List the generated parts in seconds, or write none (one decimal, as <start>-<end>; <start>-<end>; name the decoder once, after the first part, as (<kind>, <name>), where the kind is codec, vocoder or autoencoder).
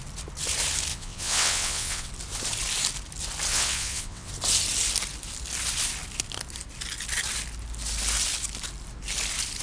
0.9-2.1 (vocoder, WaveNeXt); 3.5-4.3